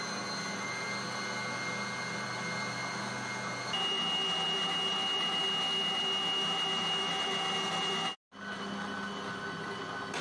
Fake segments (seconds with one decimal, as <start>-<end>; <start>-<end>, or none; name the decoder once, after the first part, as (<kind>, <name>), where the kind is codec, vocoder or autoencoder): none